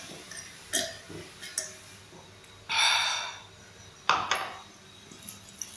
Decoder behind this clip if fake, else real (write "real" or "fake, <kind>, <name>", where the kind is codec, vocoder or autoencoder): real